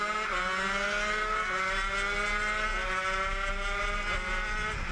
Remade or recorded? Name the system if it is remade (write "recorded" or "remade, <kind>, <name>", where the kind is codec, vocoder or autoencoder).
recorded